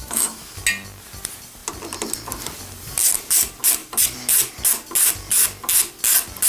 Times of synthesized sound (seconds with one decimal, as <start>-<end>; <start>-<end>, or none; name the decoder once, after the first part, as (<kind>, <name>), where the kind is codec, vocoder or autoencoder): 0.0-0.6 (autoencoder, DAC-VAE)